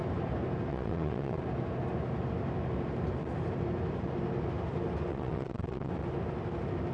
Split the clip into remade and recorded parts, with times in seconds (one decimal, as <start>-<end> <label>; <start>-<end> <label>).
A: 0.0-0.7 recorded; 0.7-1.4 remade; 1.4-5.1 recorded; 5.1-5.9 remade; 5.9-6.9 recorded